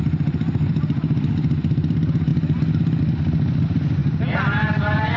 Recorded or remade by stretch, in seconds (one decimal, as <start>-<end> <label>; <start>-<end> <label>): 0.0-5.2 recorded